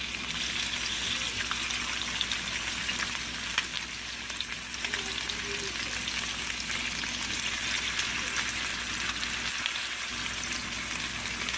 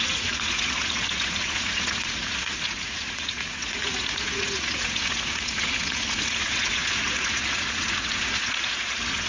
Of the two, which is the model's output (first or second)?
second